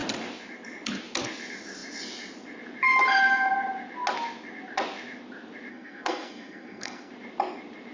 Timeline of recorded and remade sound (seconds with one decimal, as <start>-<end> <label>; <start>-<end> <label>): 0.0-5.7 recorded; 5.7-7.1 remade; 7.1-7.9 recorded